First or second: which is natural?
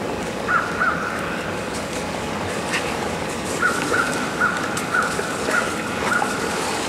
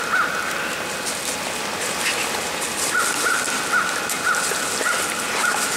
second